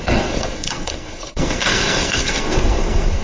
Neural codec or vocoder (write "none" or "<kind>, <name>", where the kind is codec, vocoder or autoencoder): codec, SNAC